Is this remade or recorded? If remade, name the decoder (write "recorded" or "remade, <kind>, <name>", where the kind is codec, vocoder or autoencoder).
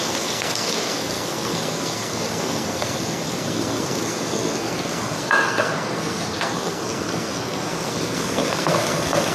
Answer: remade, codec, SNAC